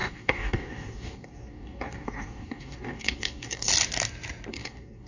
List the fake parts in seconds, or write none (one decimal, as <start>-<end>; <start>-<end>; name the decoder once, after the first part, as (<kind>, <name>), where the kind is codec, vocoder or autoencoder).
0.0-3.7 (codec, DAC); 4.5-5.1